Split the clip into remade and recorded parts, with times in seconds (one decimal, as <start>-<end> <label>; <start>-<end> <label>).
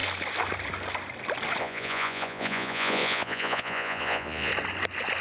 0.0-1.6 recorded; 1.6-4.5 remade; 4.5-5.2 recorded